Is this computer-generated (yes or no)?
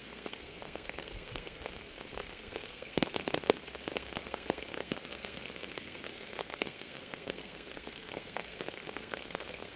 yes